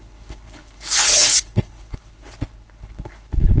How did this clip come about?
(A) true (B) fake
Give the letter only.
B